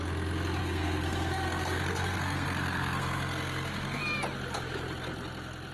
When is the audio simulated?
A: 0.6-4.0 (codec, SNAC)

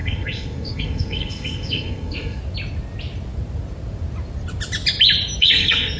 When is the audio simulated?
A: 0.0-2.4 (codec, SNAC); 5.4-6.0